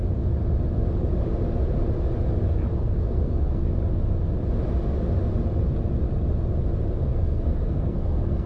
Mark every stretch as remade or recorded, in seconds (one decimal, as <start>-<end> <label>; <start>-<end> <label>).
0.0-2.8 recorded; 2.8-3.6 remade; 3.6-7.0 recorded; 7.0-8.5 remade